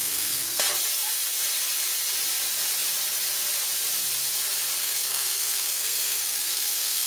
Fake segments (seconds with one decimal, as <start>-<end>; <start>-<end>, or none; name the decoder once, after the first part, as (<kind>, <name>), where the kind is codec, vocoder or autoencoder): 0.0-0.6 (codec, SNAC); 4.8-7.1